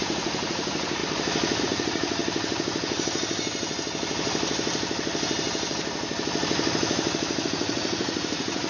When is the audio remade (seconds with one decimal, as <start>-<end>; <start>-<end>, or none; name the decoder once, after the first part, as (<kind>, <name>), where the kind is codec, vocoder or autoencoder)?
0.0-1.0 (vocoder, Vocos); 1.6-2.2; 7.4-8.7